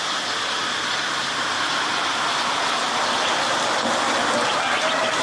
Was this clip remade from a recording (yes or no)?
no